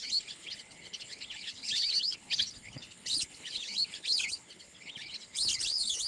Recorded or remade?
remade